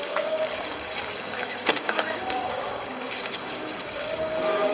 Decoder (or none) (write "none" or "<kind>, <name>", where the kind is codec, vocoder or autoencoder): codec, DAC